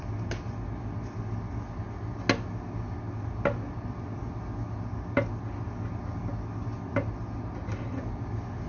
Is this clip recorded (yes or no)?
yes